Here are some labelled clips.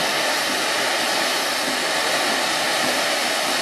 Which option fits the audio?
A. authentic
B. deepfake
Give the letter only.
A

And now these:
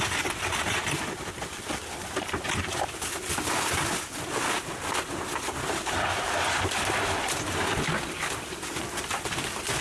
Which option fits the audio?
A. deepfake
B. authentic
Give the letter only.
A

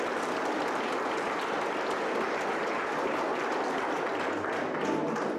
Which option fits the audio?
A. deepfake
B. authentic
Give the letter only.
B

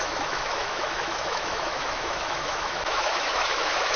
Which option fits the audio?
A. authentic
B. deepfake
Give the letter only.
B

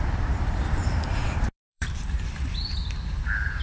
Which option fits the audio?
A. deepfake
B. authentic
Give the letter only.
A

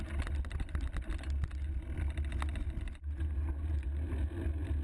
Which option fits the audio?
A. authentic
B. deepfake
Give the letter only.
A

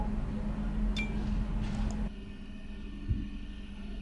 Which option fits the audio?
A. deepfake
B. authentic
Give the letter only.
B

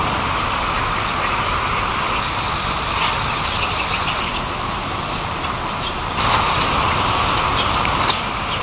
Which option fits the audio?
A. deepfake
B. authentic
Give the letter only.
B